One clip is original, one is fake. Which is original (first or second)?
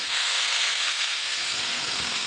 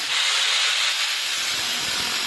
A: second